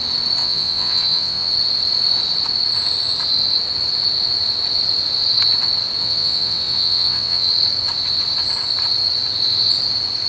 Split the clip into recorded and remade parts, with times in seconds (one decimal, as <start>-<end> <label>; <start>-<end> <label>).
0.0-0.4 recorded; 0.4-1.5 remade; 1.5-6.0 recorded; 6.0-7.5 remade; 7.5-10.3 recorded